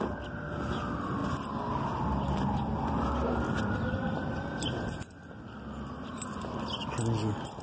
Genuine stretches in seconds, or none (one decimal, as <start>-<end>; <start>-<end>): 0.0-7.6